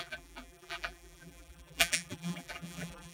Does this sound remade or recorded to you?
remade